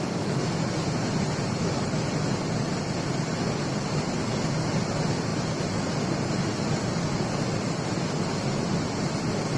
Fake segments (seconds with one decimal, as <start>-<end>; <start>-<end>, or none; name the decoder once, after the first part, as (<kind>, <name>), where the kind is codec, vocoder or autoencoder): none